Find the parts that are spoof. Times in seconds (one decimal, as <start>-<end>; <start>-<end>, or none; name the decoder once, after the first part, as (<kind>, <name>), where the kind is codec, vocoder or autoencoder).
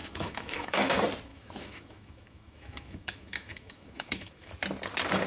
0.0-0.9 (autoencoder, DAC-VAE); 1.3-4.5